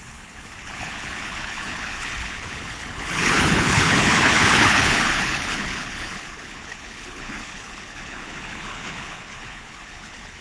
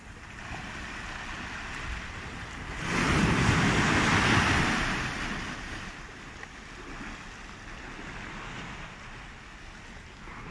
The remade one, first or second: first